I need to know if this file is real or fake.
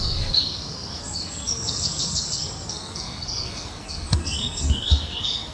fake